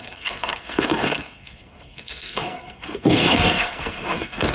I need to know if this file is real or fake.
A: fake